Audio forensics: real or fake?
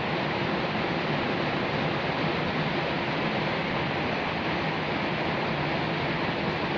real